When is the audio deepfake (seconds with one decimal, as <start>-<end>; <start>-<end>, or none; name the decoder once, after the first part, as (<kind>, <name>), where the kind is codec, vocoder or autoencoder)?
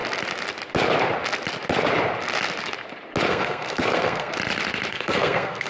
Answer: 3.3-4.3 (codec, SNAC); 4.9-5.7